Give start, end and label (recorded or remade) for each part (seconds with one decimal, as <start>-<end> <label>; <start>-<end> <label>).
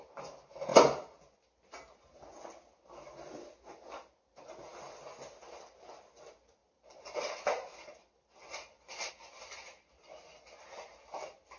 0.0-6.6 recorded; 6.6-9.1 remade; 9.1-11.6 recorded